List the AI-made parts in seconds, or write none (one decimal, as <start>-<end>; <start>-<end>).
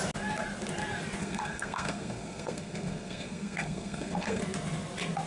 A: 1.2-4.4